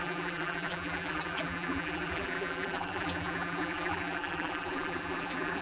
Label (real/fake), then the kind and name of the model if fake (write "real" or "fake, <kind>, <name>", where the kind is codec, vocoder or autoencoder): fake, vocoder, BigVGAN v2